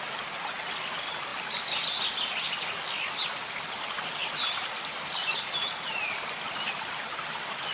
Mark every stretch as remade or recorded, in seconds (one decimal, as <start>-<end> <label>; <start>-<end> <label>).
0.0-7.7 recorded